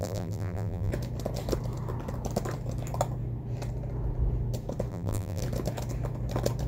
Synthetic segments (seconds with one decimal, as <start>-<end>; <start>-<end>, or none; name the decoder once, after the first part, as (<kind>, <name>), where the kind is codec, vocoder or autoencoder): 0.0-0.9 (vocoder, BigVGAN v2); 4.9-5.4